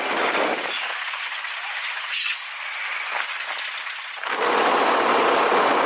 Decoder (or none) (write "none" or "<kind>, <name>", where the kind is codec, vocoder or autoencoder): none